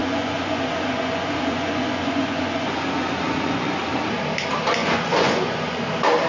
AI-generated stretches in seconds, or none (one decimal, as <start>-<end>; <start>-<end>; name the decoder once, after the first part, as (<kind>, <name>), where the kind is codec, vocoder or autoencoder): 0.0-3.8 (vocoder, Vocos); 4.8-5.8